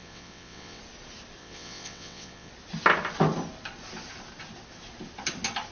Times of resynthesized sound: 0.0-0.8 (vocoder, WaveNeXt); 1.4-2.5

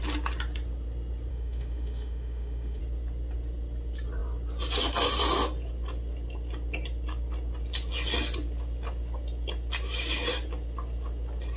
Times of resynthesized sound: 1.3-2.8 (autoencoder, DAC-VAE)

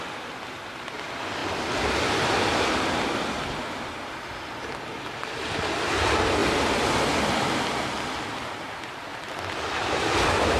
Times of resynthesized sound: 9.1-10.0 (vocoder, BigVGAN v2)